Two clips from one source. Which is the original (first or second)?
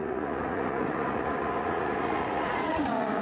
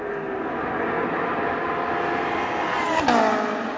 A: second